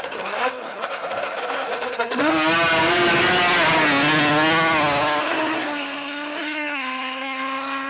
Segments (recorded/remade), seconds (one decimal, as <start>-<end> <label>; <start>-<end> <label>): 0.0-2.3 remade; 2.3-5.2 recorded; 5.2-7.9 remade